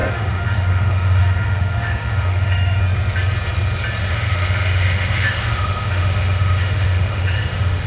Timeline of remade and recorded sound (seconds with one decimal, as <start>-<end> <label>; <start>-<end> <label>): 0.0-2.8 remade; 2.8-4.0 recorded; 4.0-7.9 remade